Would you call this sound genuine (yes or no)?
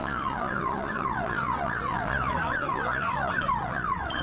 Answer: no